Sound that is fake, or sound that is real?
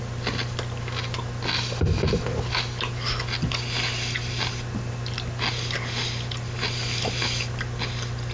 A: real